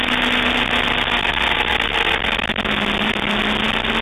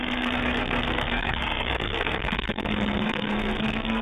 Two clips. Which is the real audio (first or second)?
first